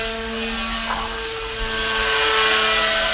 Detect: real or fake real